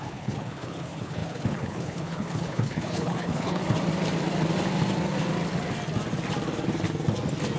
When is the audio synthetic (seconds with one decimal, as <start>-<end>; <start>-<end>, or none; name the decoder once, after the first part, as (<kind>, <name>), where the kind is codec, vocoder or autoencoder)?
0.0-3.6 (codec, HILCodec)